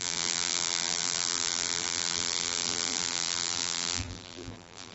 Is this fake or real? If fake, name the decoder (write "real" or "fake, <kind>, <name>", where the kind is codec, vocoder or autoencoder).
fake, vocoder, BigVGAN v2